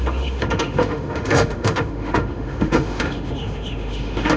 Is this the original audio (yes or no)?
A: no